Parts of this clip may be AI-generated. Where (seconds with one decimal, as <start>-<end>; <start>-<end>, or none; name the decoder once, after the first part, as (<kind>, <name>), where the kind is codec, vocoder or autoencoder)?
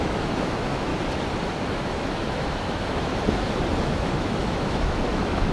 0.0-0.9 (autoencoder, DAC-VAE); 1.6-3.1; 3.8-5.5